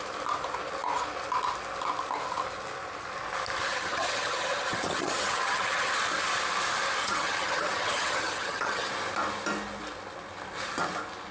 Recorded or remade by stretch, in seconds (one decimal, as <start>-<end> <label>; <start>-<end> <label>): 0.0-3.7 recorded; 3.7-5.9 remade; 5.9-7.0 recorded; 7.0-8.9 remade; 8.9-11.3 recorded